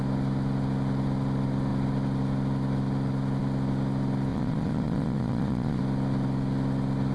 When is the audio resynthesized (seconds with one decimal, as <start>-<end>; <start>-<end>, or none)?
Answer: 4.3-5.8